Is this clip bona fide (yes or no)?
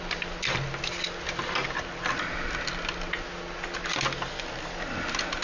yes